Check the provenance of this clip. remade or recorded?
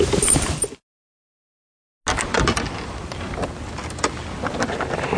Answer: recorded